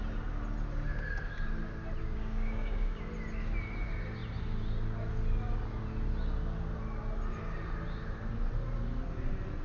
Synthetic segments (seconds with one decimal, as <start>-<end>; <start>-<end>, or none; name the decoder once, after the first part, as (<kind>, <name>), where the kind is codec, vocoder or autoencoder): 2.0-3.0 (codec, DAC)